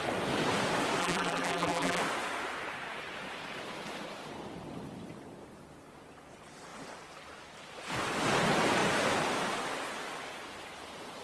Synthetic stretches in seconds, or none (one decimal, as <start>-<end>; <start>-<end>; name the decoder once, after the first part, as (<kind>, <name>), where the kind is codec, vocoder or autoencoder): 1.0-2.0 (vocoder, BigVGAN v2)